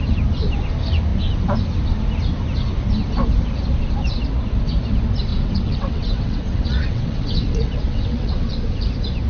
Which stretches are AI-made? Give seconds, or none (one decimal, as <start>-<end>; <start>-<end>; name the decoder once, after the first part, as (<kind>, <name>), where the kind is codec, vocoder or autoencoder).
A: 5.3-8.5 (vocoder, WaveNeXt)